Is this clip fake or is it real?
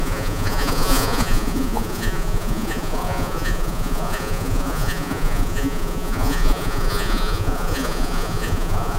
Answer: fake